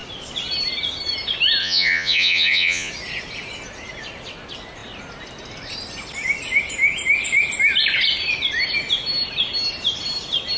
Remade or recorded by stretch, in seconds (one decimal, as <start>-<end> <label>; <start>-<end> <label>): 0.0-1.6 recorded; 1.6-2.9 remade; 2.9-10.6 recorded